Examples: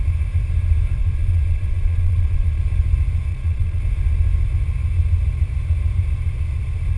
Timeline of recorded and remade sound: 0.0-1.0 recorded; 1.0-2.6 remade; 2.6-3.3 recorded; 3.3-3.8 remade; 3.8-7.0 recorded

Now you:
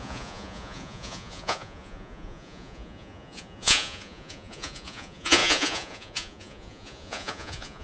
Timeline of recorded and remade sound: 0.0-7.8 remade

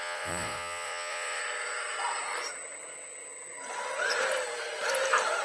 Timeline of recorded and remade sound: 0.0-1.4 remade; 1.4-5.4 recorded

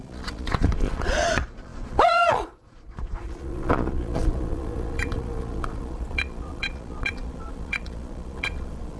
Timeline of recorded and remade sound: 0.0-9.0 remade

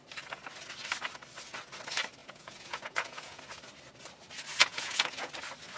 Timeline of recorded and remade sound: 0.0-2.2 recorded; 2.2-3.4 remade; 3.4-4.6 recorded; 4.6-5.3 remade; 5.3-5.8 recorded

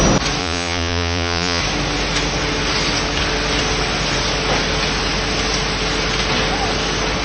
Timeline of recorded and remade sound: 0.0-0.4 recorded; 0.4-1.6 remade; 1.6-7.2 recorded

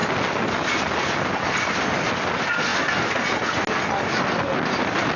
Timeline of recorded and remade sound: 0.0-5.2 recorded